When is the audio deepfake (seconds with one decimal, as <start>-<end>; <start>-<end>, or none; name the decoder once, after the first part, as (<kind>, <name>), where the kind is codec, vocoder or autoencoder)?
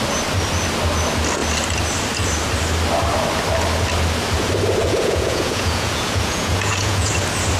4.8-7.1 (vocoder, Vocos)